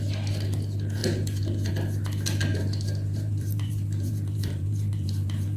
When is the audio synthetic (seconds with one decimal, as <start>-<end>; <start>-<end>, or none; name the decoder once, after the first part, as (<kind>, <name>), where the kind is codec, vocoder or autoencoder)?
2.5-5.6 (vocoder, BigVGAN v2)